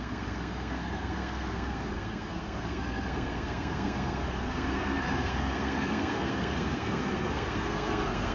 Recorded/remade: remade